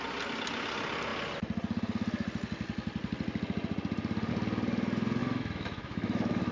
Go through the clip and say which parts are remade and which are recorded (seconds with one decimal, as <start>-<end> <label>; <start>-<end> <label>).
0.0-5.2 recorded; 5.2-6.5 remade